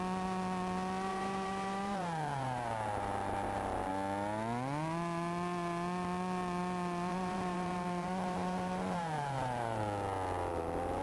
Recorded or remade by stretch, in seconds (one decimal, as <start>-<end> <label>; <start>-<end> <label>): 0.0-1.1 recorded; 1.1-3.9 remade; 3.9-7.1 recorded; 7.1-9.8 remade; 9.8-11.0 recorded